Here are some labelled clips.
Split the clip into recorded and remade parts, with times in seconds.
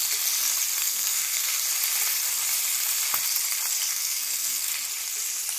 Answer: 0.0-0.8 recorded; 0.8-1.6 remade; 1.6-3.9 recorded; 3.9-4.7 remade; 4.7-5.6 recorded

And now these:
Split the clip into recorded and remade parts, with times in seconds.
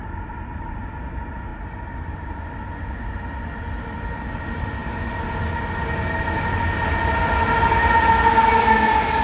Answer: 0.0-0.8 remade; 0.8-1.5 recorded; 1.5-2.4 remade; 2.4-9.2 recorded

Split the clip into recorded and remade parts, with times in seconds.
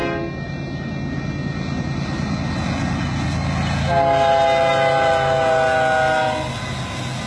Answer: 0.0-7.3 recorded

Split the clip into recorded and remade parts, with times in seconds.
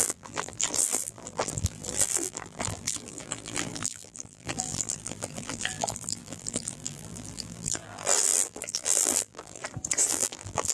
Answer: 0.0-9.6 remade; 9.6-10.1 recorded; 10.1-10.7 remade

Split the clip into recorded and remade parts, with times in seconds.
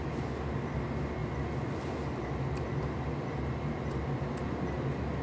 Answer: 0.0-5.2 recorded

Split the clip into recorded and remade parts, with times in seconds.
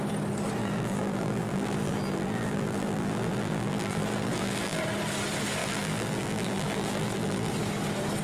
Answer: 0.0-0.6 recorded; 0.6-4.8 remade; 4.8-5.6 recorded; 5.6-7.5 remade; 7.5-8.2 recorded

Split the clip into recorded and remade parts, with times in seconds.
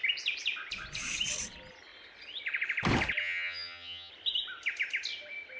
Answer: 0.0-3.2 recorded; 3.2-4.1 remade; 4.1-5.6 recorded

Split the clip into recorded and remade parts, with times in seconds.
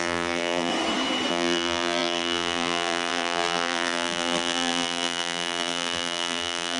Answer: 0.0-0.7 remade; 0.7-1.3 recorded; 1.3-6.8 remade